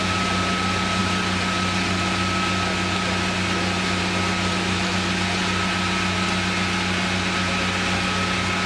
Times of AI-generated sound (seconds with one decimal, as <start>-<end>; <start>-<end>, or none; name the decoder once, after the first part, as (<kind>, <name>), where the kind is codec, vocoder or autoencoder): none